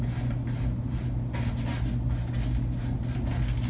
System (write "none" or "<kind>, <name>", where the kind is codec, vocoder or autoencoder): none